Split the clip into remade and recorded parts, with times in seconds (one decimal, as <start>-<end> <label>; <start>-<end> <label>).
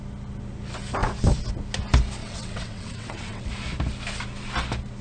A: 0.0-2.2 recorded; 2.2-3.5 remade; 3.5-5.0 recorded